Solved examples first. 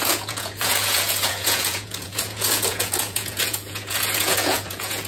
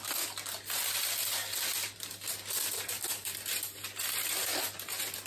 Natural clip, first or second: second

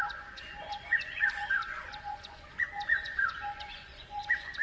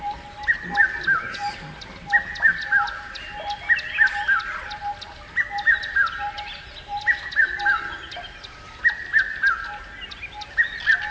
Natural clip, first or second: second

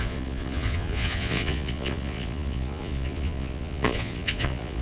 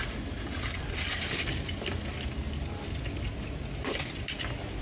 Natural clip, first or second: second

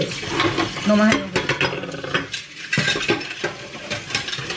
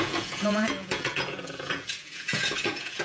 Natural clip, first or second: first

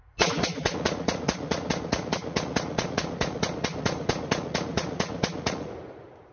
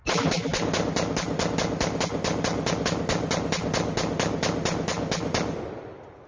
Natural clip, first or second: second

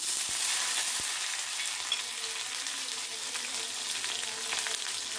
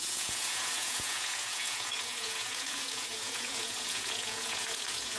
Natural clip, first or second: first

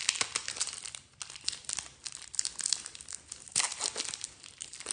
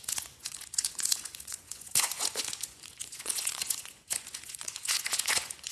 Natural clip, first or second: first